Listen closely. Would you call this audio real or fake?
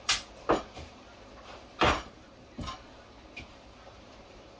fake